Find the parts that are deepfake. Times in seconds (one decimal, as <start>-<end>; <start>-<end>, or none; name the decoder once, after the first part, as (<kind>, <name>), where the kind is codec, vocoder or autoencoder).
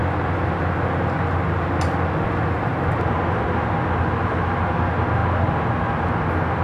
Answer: none